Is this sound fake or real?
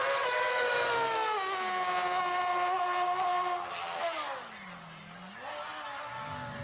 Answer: real